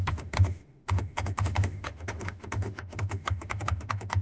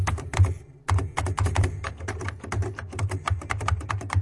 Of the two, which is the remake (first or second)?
first